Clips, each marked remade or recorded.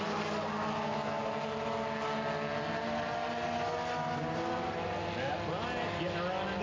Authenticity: recorded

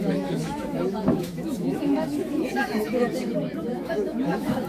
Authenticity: remade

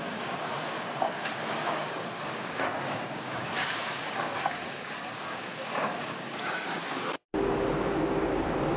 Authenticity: remade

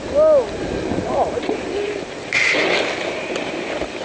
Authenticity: recorded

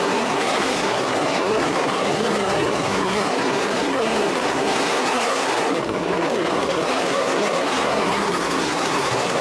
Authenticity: remade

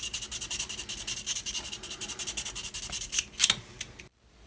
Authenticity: recorded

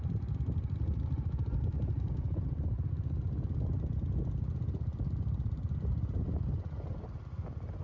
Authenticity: recorded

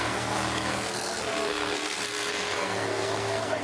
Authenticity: remade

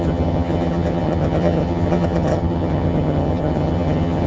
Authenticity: remade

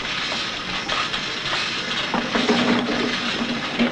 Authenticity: recorded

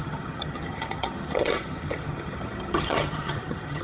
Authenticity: remade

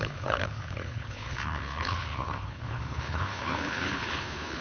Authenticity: remade